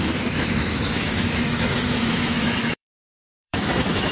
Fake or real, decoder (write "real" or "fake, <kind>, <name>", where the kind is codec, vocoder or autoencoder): fake, autoencoder, DAC-VAE